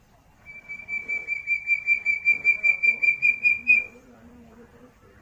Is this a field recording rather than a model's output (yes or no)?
no